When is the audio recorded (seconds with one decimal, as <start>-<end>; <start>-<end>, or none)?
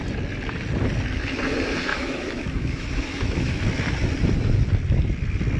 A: 0.0-1.9; 3.5-5.6